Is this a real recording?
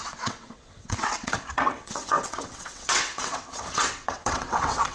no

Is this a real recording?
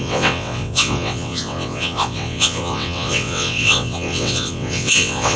no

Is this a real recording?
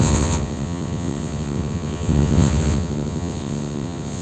no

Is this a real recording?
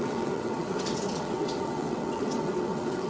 no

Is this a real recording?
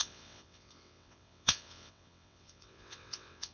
no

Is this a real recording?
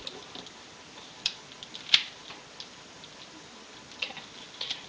yes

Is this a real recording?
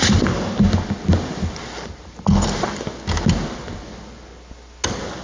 yes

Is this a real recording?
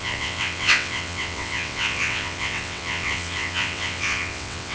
no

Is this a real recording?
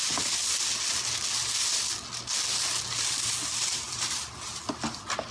yes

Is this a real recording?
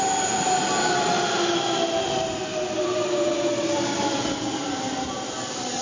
yes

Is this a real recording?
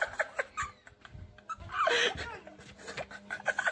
yes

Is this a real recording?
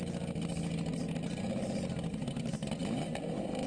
yes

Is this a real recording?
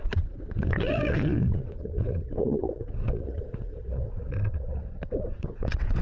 no